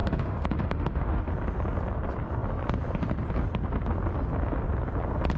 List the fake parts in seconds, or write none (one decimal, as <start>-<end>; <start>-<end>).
0.0-1.2